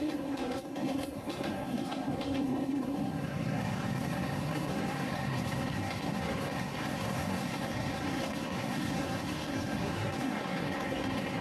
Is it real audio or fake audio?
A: fake